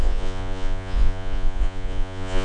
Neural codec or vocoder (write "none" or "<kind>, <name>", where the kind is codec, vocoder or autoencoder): vocoder, Vocos